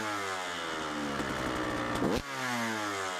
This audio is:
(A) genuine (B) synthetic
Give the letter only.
A